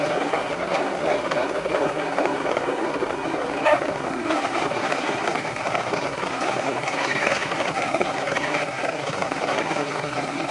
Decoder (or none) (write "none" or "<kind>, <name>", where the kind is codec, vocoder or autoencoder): codec, SNAC